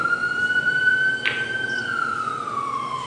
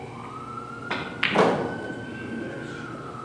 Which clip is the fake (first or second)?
first